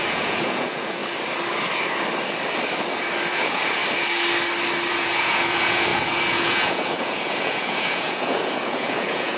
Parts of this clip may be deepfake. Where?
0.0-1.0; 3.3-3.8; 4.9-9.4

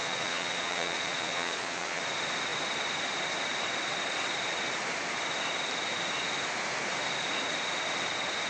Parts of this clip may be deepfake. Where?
0.0-2.0

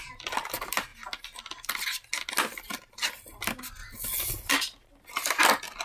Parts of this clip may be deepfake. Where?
none

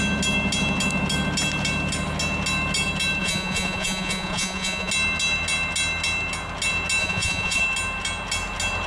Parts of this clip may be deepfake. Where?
3.2-4.9; 7.0-7.6

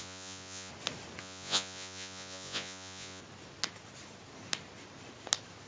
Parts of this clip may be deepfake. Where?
0.0-0.7; 1.2-3.2